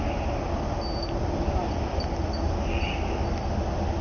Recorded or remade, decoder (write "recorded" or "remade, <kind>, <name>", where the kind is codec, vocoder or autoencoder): recorded